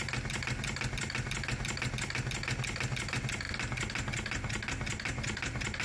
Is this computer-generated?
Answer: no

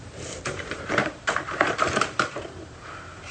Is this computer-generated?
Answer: yes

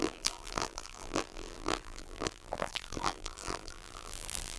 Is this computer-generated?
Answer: yes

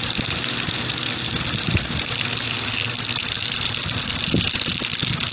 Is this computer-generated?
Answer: no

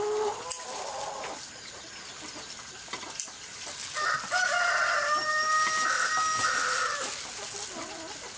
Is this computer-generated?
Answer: no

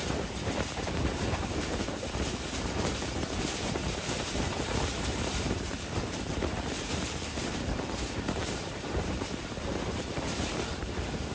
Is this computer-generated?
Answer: yes